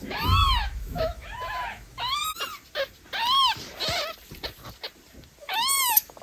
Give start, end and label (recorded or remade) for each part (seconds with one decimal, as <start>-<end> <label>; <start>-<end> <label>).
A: 0.0-2.2 remade; 2.2-5.4 recorded; 5.4-6.2 remade